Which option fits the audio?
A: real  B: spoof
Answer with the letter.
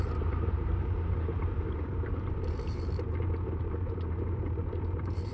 B